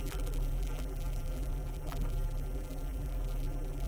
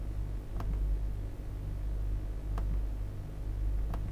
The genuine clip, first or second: second